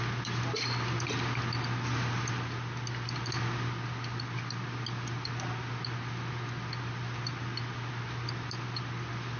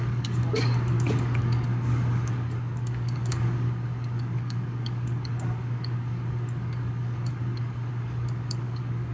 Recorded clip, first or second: first